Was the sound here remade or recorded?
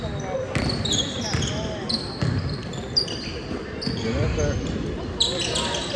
recorded